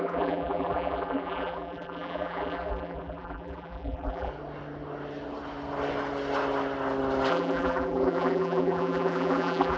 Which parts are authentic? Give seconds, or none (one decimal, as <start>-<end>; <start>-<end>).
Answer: 4.3-7.3